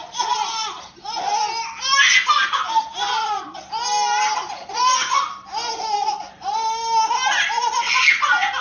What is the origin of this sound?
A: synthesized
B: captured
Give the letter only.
B